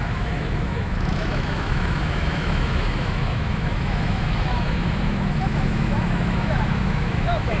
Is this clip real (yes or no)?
no